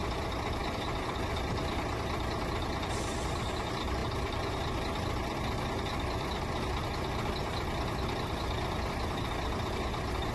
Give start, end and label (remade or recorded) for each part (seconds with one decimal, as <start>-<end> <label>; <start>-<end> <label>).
0.0-10.3 recorded

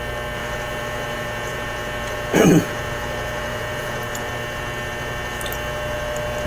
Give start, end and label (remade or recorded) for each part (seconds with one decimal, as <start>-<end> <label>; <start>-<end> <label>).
0.0-0.4 recorded; 0.4-4.3 remade; 4.3-6.5 recorded

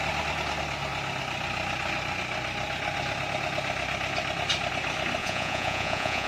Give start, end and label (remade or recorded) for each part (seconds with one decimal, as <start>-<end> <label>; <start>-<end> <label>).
0.0-5.2 recorded; 5.2-6.3 remade

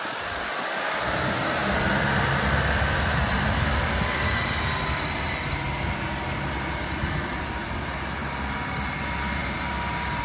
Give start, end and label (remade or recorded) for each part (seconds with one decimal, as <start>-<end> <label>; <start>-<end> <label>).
0.0-10.2 recorded

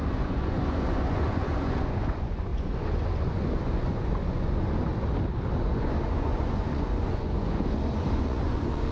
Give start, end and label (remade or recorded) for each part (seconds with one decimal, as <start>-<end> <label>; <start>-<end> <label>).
0.0-4.9 remade; 4.9-5.6 recorded; 5.6-8.9 remade